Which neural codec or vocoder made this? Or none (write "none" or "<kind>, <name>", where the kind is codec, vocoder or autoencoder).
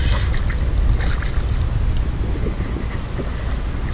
none